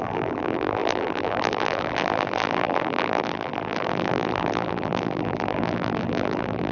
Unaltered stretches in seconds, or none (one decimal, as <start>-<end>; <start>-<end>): none